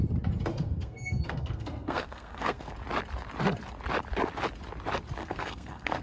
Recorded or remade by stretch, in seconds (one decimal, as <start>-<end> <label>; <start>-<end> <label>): 0.0-0.5 recorded; 0.5-2.7 remade; 2.7-5.2 recorded; 5.2-6.0 remade